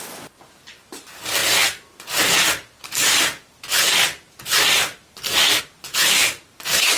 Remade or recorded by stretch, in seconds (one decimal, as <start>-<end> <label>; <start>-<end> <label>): 0.0-7.0 recorded